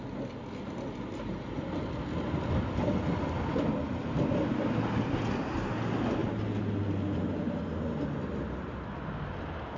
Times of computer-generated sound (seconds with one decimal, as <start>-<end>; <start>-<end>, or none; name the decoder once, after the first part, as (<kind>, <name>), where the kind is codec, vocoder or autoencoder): none